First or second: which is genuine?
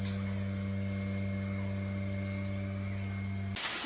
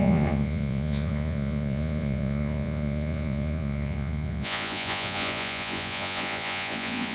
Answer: first